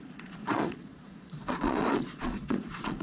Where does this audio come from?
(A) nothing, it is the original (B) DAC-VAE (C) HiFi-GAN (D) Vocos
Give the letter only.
D